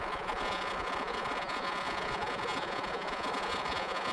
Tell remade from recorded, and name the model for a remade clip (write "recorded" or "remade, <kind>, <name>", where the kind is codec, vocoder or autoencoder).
remade, vocoder, Vocos